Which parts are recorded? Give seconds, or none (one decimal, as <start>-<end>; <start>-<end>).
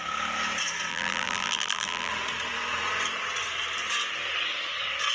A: 0.0-0.9; 2.1-5.1